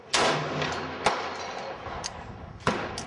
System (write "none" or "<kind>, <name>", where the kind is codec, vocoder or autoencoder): none